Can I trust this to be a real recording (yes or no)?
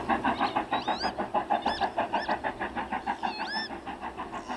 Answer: yes